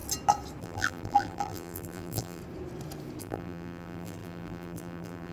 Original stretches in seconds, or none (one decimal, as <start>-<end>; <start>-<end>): 0.0-0.6; 2.4-3.2